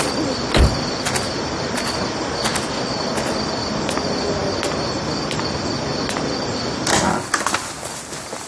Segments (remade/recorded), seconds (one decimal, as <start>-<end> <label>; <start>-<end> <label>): 0.0-8.5 recorded

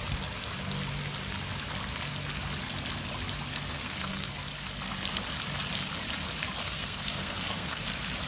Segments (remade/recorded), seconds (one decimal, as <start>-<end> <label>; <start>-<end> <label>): 0.0-3.7 recorded; 3.7-4.3 remade; 4.3-6.6 recorded; 6.6-7.9 remade; 7.9-8.3 recorded

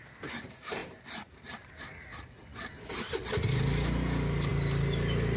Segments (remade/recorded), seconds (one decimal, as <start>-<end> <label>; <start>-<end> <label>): 0.0-0.8 recorded; 0.8-1.7 remade; 1.7-5.4 recorded

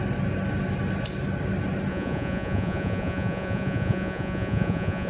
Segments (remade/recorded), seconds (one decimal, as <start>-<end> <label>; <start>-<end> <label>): 0.0-1.9 recorded; 1.9-5.1 remade

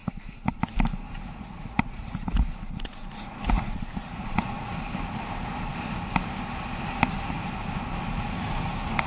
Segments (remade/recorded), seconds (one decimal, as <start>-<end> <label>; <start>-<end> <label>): 0.0-0.6 remade; 0.6-1.3 recorded; 1.3-4.7 remade; 4.7-9.1 recorded